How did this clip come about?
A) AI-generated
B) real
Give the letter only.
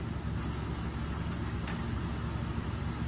B